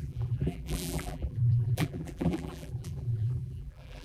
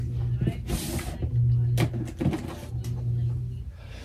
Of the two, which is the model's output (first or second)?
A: first